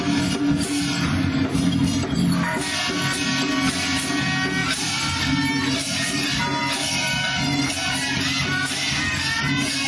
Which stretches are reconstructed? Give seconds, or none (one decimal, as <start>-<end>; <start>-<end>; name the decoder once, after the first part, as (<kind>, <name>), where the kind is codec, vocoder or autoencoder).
4.6-5.2 (vocoder, BigVGAN v2)